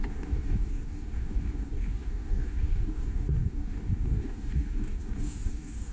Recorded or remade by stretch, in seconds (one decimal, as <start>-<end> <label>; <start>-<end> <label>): 0.0-5.9 remade